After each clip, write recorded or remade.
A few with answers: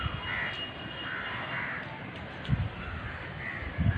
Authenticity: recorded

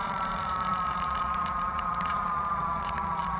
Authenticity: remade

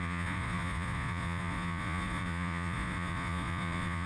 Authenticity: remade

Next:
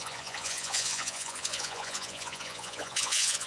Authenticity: remade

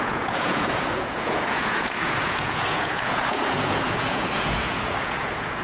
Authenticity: remade